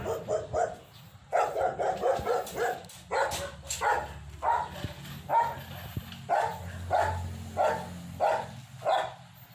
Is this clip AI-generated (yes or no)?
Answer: no